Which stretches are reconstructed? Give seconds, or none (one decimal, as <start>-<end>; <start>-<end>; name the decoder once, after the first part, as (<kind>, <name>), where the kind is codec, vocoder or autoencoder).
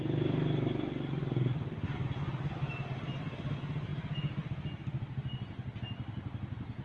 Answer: none